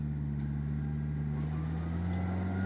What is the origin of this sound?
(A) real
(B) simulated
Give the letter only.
A